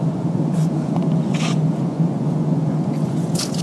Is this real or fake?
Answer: fake